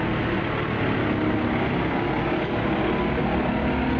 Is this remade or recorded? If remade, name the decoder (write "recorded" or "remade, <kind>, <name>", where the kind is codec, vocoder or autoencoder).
recorded